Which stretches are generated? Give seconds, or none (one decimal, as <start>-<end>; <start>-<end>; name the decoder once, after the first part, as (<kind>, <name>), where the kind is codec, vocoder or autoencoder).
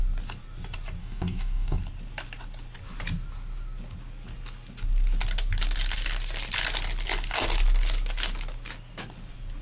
1.0-1.8 (codec, DAC)